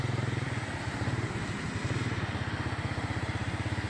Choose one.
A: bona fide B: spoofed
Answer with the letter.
B